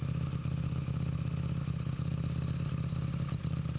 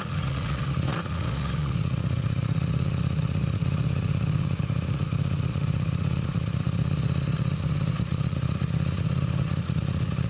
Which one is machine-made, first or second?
second